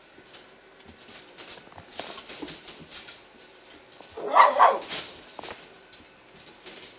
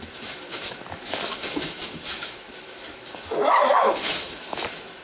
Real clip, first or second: first